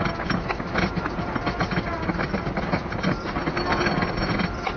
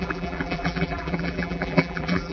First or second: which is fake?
second